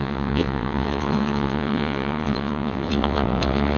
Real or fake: fake